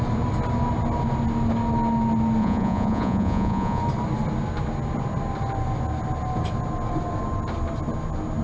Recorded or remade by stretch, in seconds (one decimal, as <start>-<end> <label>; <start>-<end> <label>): 0.0-2.4 recorded; 2.4-3.8 remade; 3.8-8.4 recorded